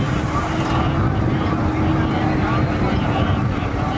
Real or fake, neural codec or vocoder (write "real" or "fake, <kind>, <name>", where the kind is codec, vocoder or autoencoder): real